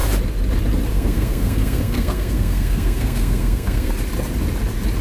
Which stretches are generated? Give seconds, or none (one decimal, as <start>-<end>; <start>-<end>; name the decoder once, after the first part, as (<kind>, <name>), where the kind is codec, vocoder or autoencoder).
0.9-3.9 (codec, SNAC)